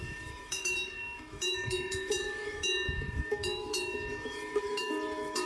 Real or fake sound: fake